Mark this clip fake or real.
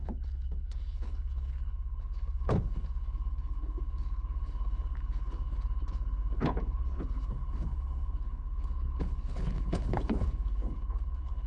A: fake